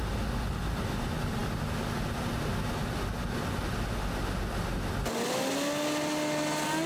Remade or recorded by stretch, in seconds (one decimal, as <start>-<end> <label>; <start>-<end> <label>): 0.0-6.9 recorded